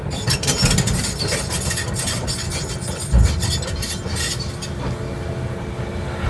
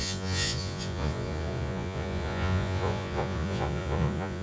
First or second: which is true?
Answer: first